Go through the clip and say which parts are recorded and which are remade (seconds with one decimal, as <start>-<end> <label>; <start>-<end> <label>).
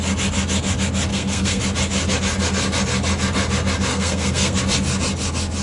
0.0-1.1 recorded; 1.1-1.6 remade; 1.6-3.9 recorded; 3.9-4.6 remade; 4.6-5.6 recorded